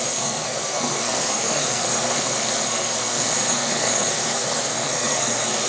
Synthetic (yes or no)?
yes